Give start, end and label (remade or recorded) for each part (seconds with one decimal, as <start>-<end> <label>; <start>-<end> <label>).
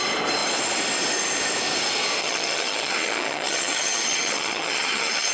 0.0-2.2 recorded; 2.2-5.3 remade